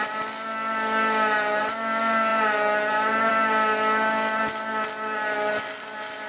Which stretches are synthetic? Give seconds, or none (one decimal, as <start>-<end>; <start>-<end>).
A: none